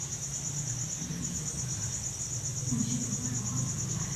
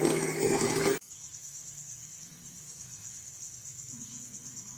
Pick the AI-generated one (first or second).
second